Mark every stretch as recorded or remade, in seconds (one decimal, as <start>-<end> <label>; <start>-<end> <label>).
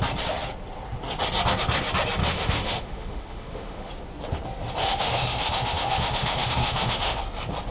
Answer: 0.0-2.2 recorded; 2.2-3.9 remade; 3.9-4.8 recorded; 4.8-7.2 remade; 7.2-7.7 recorded